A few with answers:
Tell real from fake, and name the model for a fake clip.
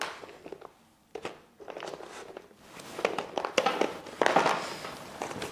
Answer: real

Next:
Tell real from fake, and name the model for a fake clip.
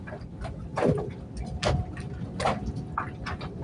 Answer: real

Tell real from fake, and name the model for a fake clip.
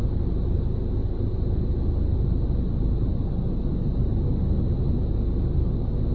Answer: real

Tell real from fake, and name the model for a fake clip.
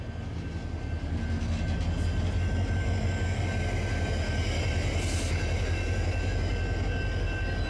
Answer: real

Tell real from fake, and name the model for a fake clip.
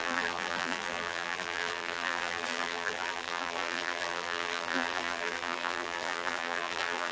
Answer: fake, vocoder, BigVGAN v2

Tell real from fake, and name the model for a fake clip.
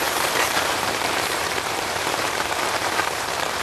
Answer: fake, vocoder, BigVGAN v2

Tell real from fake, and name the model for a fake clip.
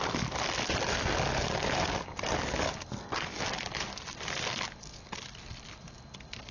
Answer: real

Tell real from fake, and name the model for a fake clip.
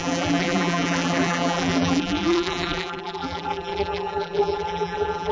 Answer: fake, vocoder, BigVGAN v2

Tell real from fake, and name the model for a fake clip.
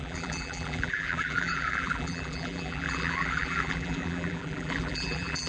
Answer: fake, vocoder, BigVGAN v2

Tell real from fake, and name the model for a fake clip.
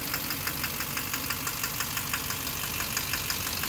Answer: real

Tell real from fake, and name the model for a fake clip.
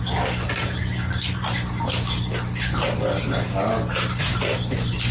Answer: real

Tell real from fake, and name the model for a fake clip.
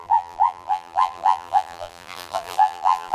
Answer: fake, vocoder, BigVGAN v2